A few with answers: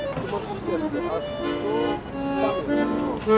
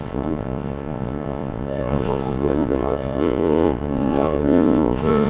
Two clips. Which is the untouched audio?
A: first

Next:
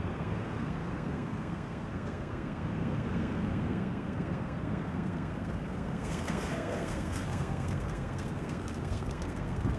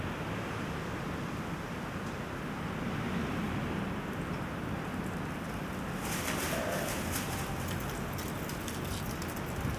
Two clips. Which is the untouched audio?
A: second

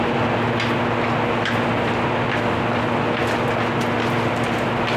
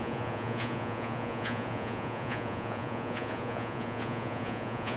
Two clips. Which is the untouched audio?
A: first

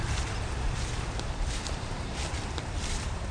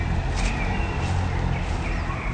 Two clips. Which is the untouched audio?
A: second